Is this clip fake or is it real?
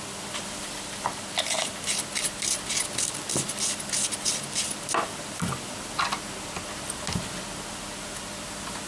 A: real